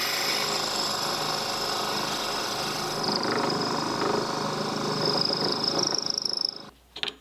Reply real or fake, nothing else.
real